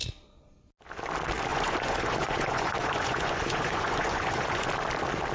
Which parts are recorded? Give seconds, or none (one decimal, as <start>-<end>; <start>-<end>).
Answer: 0.0-1.5; 4.7-5.3